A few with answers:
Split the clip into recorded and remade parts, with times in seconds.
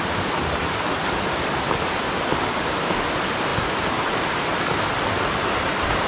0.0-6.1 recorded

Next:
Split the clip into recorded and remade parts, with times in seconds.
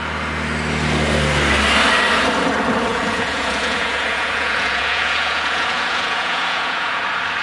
0.0-2.9 recorded; 2.9-7.0 remade; 7.0-7.4 recorded